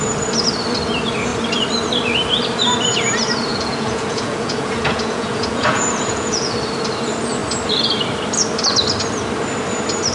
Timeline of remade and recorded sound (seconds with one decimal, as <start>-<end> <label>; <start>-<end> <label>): 0.0-3.5 recorded; 3.5-6.5 remade; 6.5-10.1 recorded